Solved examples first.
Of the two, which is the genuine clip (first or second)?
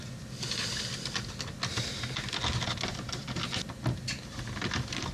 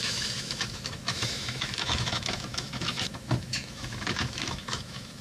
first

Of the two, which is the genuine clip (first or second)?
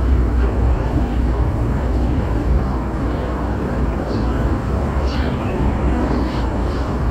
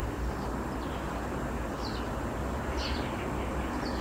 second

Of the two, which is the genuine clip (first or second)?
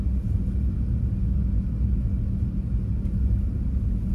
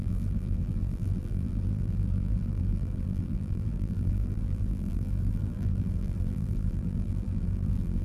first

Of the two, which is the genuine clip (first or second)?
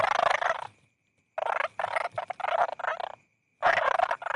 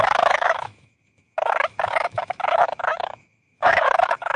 first